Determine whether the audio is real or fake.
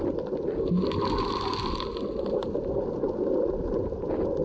real